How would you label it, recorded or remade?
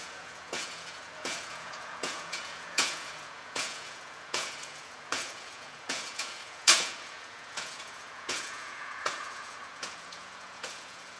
remade